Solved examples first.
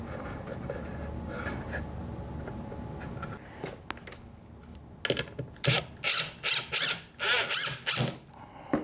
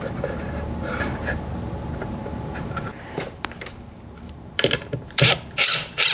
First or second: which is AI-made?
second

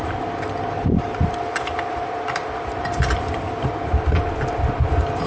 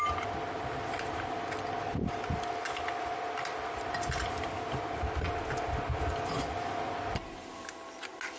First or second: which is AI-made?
first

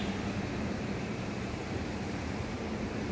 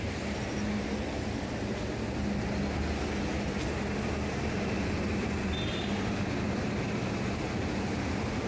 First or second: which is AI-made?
first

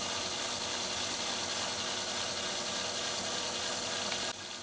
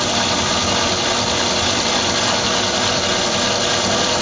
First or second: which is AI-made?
second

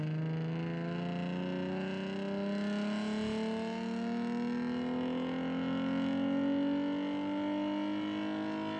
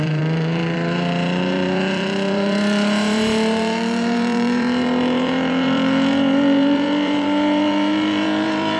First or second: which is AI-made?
second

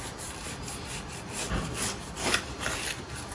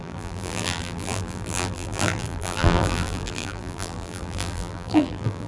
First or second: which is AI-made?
second